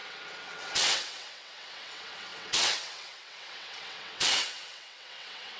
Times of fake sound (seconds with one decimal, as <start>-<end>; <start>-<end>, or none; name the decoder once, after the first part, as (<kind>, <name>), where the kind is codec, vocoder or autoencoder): 0.0-5.6 (vocoder, WaveNeXt)